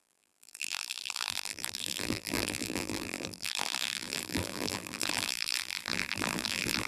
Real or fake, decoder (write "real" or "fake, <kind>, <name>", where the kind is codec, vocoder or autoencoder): fake, vocoder, BigVGAN v2